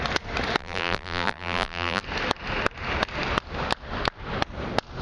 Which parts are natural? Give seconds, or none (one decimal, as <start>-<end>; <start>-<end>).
0.0-0.6; 2.0-5.0